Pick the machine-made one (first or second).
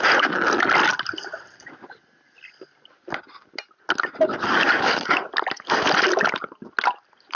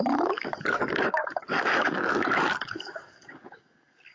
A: second